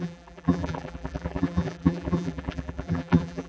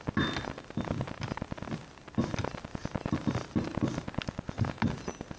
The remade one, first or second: first